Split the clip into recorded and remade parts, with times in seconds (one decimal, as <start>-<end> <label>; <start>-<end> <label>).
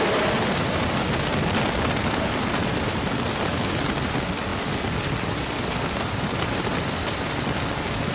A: 0.0-8.1 recorded